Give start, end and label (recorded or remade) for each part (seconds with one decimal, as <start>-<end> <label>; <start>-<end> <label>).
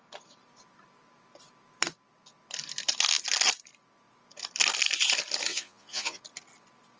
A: 0.0-5.5 recorded; 5.5-6.2 remade; 6.2-7.0 recorded